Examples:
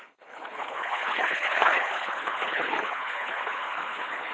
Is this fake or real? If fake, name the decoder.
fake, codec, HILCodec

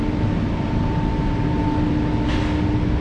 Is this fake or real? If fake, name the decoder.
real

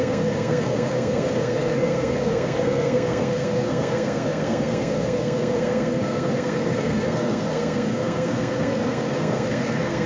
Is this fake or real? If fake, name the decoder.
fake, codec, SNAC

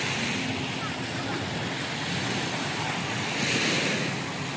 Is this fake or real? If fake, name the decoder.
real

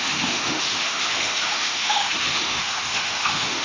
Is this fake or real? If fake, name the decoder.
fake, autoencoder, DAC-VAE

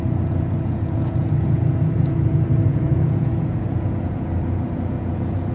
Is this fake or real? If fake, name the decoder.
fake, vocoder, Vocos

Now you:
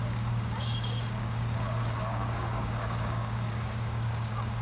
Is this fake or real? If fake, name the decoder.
fake, codec, DAC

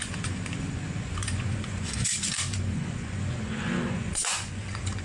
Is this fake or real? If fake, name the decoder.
fake, vocoder, Vocos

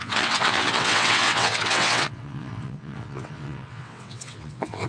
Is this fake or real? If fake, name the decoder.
fake, vocoder, WaveNeXt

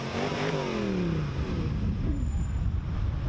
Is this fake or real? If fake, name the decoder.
real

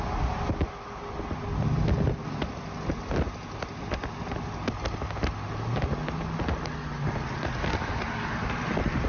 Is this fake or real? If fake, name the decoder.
real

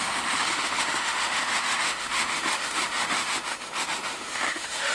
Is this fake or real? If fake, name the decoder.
fake, autoencoder, DAC-VAE